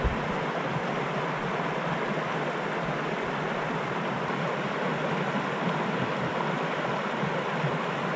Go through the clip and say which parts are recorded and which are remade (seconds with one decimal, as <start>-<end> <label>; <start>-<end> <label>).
0.0-8.2 recorded